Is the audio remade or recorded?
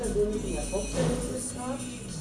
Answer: recorded